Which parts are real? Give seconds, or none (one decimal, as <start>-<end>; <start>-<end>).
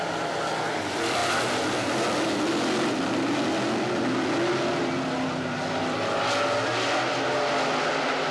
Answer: 0.0-8.3